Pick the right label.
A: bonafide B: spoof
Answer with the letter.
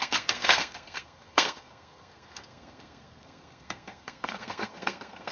B